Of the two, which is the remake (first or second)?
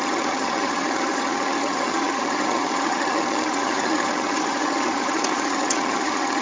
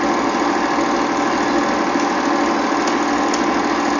first